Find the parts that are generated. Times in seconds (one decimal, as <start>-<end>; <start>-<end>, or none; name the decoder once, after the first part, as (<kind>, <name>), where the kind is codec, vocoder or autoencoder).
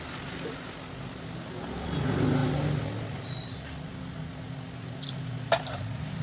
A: none